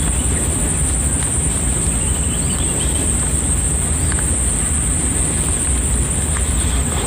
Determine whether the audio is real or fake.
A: real